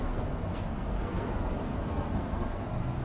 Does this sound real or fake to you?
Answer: fake